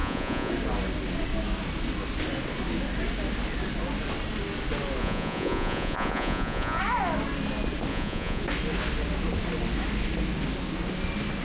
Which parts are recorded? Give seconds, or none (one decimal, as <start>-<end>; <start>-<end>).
0.5-5.0; 6.8-7.9; 8.4-11.4